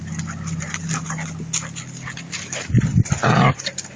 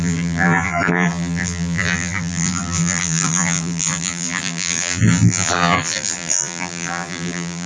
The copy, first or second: second